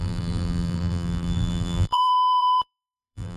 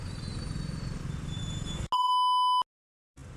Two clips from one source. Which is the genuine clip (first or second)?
second